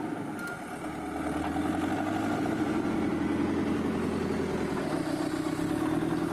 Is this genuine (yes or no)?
yes